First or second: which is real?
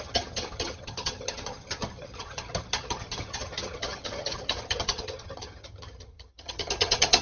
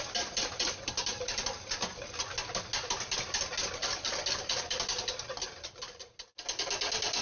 second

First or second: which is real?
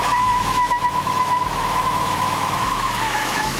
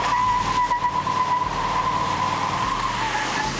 second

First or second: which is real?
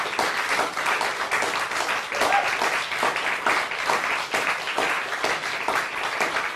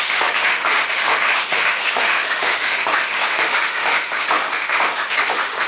first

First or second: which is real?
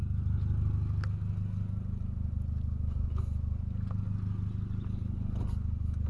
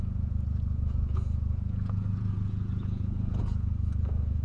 first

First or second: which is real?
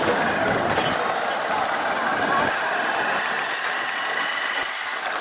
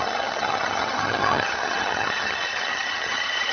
first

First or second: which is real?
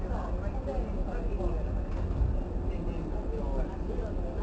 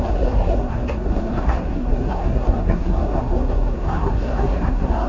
first